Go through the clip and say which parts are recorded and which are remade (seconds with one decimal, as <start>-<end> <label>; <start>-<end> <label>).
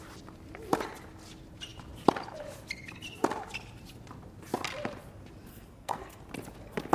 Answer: 0.0-5.5 recorded; 5.5-6.2 remade; 6.2-6.9 recorded